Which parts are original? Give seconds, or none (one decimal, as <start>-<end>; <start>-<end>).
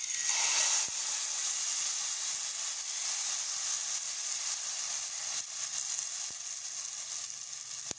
0.0-8.0